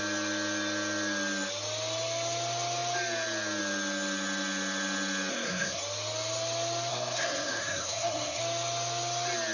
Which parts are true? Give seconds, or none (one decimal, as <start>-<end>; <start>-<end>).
0.0-5.3; 5.8-6.9; 8.4-9.5